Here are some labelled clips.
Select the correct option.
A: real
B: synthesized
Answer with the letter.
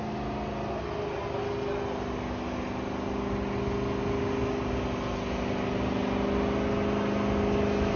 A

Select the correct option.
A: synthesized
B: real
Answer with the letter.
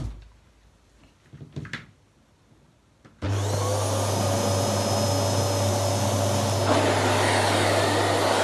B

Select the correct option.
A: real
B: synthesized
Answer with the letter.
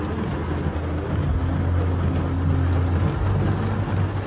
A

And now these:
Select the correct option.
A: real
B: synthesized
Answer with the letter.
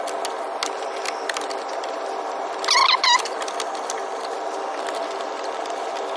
A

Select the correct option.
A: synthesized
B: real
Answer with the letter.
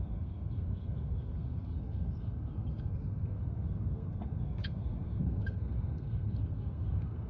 A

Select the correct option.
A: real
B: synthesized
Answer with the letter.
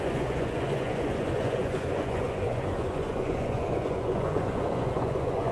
B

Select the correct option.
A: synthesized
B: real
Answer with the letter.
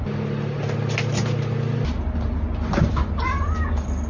B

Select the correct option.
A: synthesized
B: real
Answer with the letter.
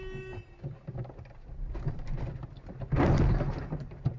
B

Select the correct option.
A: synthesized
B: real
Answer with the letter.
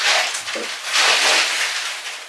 B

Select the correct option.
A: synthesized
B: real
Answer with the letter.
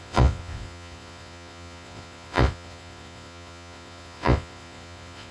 A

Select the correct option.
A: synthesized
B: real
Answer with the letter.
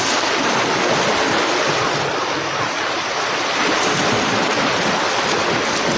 B